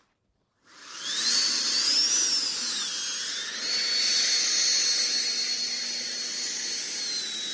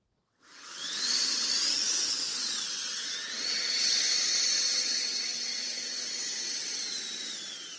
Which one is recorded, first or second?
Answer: first